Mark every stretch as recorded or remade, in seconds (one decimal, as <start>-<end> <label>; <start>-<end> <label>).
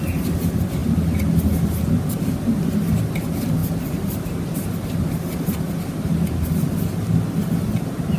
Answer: 0.0-8.2 recorded